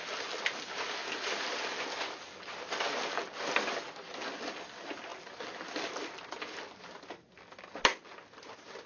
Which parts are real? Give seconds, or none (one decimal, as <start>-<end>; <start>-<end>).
0.0-8.9